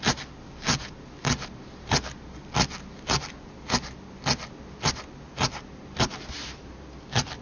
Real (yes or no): yes